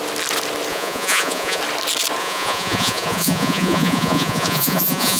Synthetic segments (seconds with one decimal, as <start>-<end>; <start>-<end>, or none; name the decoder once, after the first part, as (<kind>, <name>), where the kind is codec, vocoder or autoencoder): 0.7-1.6 (vocoder, Vocos); 2.2-5.2